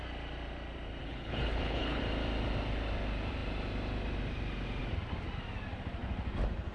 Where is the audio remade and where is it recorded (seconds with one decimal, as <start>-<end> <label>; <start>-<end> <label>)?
0.0-1.0 recorded; 1.0-2.0 remade; 2.0-6.7 recorded